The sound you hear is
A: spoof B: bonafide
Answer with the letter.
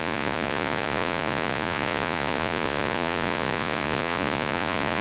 A